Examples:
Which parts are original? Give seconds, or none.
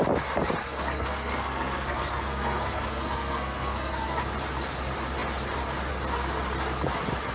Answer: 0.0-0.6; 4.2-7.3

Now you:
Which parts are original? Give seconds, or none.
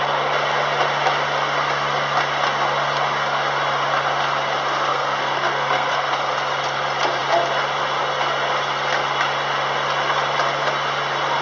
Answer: 0.0-4.9; 6.1-11.4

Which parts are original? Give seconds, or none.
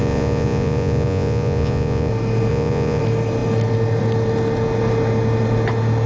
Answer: 2.1-2.5; 3.0-6.1